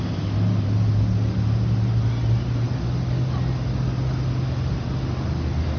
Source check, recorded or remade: recorded